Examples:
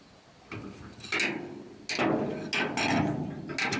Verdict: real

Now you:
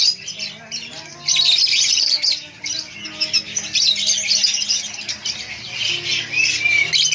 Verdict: real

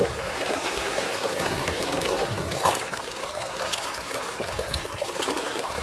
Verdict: fake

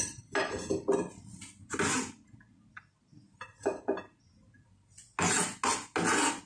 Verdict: real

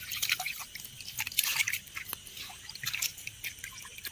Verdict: real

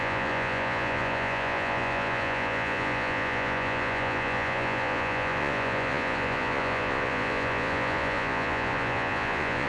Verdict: fake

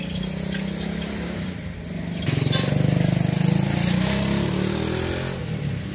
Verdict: real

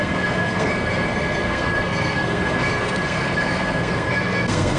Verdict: fake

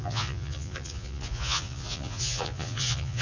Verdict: fake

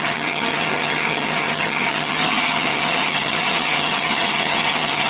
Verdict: fake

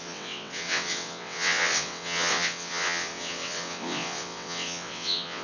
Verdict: fake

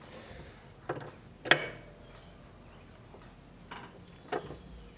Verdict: real